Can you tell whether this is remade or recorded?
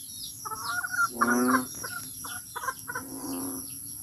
recorded